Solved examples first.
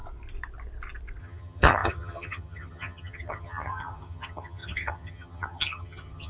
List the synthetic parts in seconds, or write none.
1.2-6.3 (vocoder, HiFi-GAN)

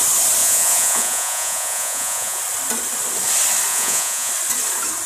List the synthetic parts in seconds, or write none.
0.4-2.4 (vocoder, Vocos); 3.7-4.3